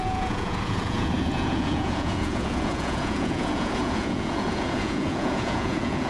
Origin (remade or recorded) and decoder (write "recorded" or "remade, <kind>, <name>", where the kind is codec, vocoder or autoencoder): remade, vocoder, Vocos